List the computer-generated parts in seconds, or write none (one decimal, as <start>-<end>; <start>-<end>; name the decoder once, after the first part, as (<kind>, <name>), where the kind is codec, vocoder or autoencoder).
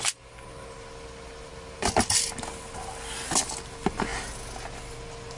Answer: none